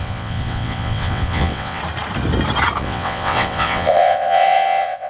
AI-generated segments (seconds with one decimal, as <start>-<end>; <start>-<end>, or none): 0.0-1.8; 2.8-5.1